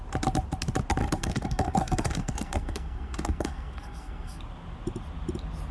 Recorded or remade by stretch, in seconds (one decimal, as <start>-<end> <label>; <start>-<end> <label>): 0.0-1.0 recorded; 1.0-4.4 remade; 4.4-5.7 recorded